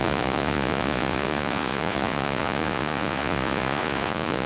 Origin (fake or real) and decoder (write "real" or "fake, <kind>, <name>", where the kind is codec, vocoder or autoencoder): fake, vocoder, Vocos